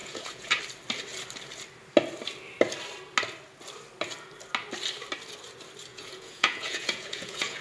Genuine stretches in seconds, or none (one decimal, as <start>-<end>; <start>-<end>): 0.6-5.9